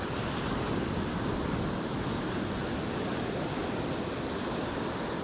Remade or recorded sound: recorded